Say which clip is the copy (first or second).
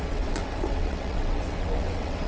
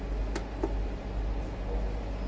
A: first